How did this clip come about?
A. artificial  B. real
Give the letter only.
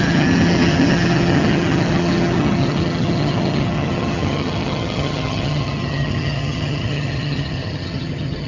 A